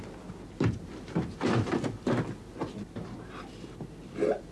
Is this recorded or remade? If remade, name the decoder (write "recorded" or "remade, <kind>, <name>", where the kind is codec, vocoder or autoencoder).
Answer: recorded